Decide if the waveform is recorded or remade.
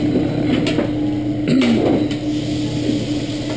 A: recorded